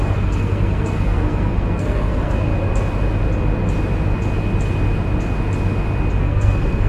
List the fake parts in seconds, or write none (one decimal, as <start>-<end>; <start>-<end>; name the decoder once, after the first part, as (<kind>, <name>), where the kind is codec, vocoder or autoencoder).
0.0-2.5 (codec, SNAC); 6.2-6.9